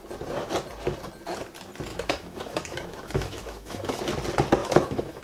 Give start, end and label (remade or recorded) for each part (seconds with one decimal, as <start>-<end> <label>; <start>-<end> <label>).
0.0-1.9 recorded; 1.9-4.0 remade; 4.0-4.6 recorded; 4.6-5.2 remade